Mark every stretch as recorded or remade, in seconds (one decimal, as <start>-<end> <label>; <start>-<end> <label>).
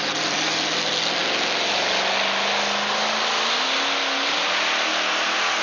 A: 0.0-5.6 recorded